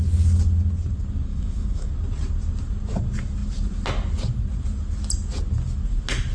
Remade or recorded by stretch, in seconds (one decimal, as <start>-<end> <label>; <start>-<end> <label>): 0.0-1.3 recorded; 1.3-1.9 remade; 1.9-6.3 recorded